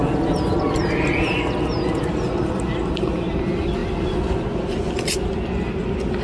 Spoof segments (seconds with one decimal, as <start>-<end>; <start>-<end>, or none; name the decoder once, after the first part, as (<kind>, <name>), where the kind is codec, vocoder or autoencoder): 0.0-1.3 (vocoder, BigVGAN v2)